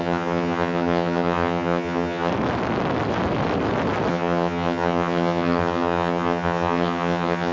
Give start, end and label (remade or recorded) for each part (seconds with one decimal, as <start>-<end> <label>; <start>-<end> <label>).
0.0-2.3 remade; 2.3-4.1 recorded; 4.1-7.5 remade